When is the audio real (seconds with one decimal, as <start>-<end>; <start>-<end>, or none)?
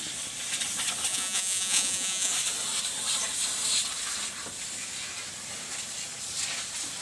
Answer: 0.0-1.1; 2.3-7.0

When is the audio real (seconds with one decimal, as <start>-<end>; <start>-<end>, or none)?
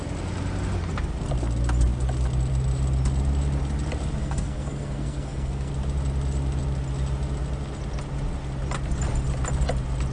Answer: 0.0-4.2; 5.7-10.1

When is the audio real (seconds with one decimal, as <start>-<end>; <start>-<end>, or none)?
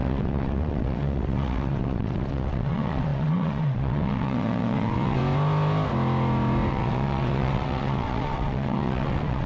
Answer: 5.2-6.7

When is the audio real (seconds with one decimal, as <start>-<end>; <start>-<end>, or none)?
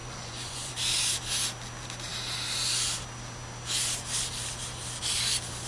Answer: 0.7-5.7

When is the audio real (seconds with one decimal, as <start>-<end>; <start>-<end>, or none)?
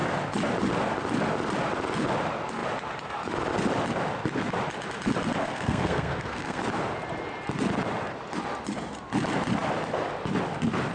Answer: 0.0-5.4; 6.6-10.9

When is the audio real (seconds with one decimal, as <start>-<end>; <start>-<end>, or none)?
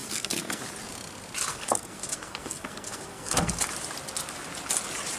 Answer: 0.6-1.5; 3.5-5.2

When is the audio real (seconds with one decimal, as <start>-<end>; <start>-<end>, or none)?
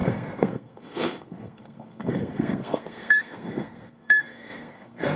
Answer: none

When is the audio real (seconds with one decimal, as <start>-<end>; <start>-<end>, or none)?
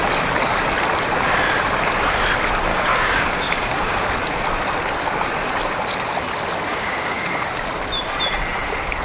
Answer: 0.0-2.7; 4.1-6.7; 7.4-9.0